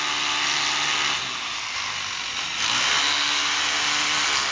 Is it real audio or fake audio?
real